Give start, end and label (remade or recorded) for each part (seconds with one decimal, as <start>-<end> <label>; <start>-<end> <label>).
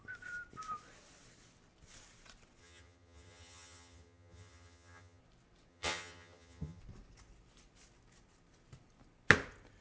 0.0-2.6 recorded; 2.6-5.2 remade; 5.2-5.7 recorded; 5.7-6.8 remade; 6.8-9.8 recorded